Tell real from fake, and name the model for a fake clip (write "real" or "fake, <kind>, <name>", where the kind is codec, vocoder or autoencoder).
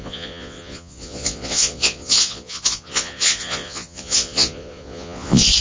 fake, vocoder, Vocos